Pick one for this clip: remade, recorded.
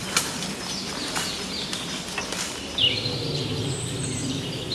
recorded